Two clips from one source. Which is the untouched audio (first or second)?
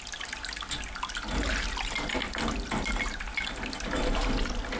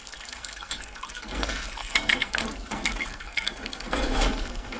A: first